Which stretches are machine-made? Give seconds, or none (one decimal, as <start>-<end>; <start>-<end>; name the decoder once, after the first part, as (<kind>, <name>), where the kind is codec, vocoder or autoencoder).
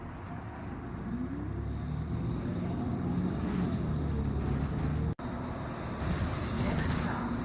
none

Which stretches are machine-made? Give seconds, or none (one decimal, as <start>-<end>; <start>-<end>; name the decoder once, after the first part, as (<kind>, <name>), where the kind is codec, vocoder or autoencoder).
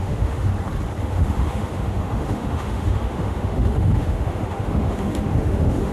0.0-0.5 (autoencoder, DAC-VAE); 1.0-5.9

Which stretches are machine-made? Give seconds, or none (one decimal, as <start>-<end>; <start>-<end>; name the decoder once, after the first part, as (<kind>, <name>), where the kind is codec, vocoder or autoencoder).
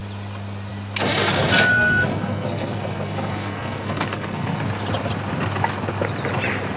1.7-4.6 (codec, SNAC)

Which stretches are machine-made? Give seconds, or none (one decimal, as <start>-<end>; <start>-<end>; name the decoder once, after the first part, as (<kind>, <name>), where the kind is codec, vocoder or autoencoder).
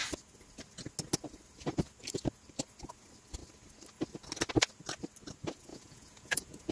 5.7-6.7 (vocoder, Vocos)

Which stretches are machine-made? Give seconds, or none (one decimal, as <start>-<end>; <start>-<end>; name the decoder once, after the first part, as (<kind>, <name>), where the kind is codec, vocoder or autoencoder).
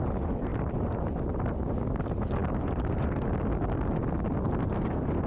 none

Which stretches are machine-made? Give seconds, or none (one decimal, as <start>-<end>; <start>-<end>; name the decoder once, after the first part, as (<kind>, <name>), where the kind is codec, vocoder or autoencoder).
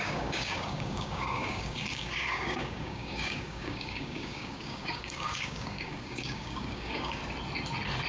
0.0-7.2 (codec, DAC)